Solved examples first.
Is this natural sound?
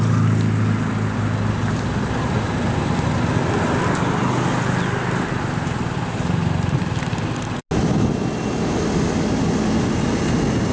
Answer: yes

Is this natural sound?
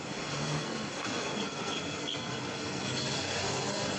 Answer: no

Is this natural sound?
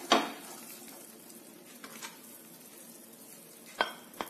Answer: yes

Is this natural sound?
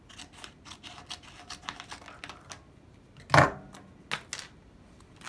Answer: yes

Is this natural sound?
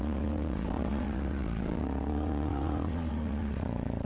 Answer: no